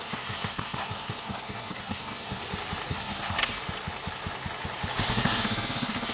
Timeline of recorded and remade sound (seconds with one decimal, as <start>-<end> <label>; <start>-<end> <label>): 0.0-2.4 remade; 2.4-2.9 recorded; 2.9-3.6 remade; 3.6-5.1 recorded; 5.1-6.1 remade